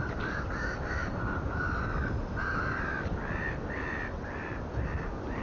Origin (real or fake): real